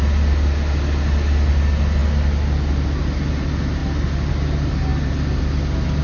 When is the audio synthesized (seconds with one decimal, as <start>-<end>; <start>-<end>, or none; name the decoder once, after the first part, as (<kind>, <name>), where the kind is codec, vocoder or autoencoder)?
none